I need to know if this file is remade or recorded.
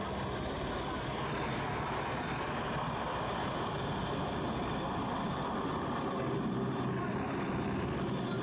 recorded